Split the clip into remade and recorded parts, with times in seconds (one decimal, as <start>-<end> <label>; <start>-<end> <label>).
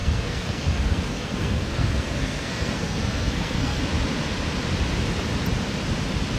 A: 0.0-3.8 remade; 3.8-6.4 recorded